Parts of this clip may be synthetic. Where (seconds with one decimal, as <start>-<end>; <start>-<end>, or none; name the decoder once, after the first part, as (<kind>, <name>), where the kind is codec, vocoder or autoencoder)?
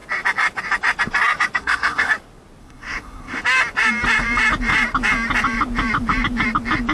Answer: 1.6-2.1 (codec, SNAC); 2.6-3.4